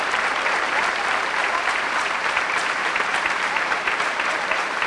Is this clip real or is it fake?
fake